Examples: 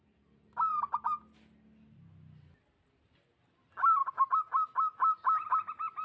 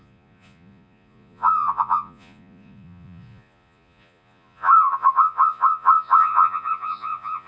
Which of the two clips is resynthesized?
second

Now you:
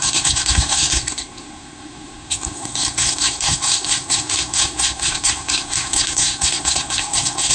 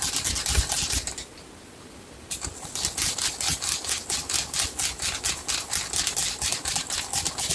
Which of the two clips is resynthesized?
first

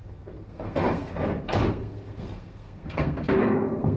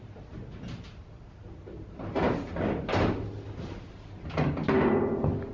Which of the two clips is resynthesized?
first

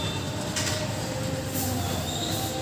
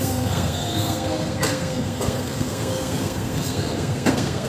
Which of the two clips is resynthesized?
second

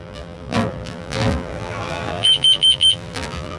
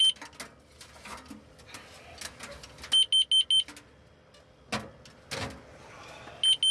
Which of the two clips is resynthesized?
first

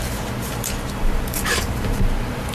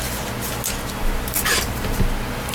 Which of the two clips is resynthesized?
first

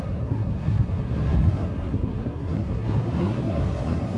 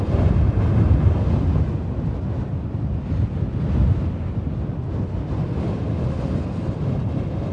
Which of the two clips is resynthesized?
first